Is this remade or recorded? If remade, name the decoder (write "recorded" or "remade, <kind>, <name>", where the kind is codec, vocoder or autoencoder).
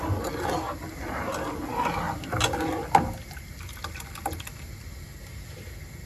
recorded